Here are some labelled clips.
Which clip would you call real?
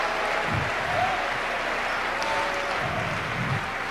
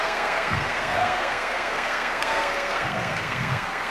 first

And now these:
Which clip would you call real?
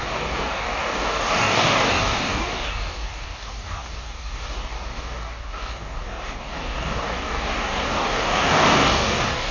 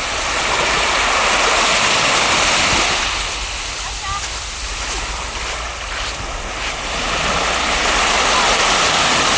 second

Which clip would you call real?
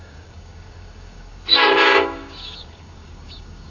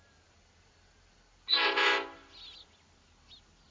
second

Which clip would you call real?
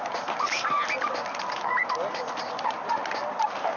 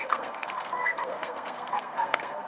first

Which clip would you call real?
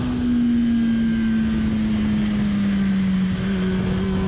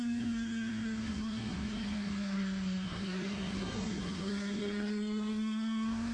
first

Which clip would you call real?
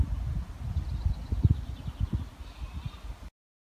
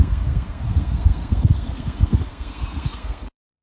first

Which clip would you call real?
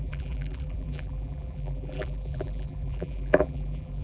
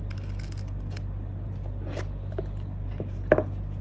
second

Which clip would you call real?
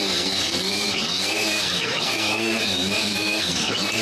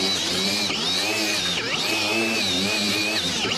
second